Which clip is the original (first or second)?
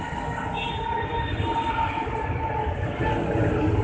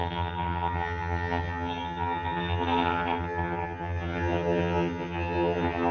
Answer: first